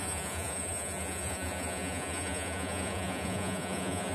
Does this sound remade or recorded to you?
remade